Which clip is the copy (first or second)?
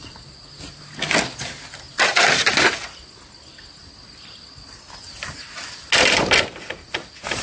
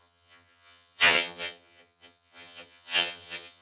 second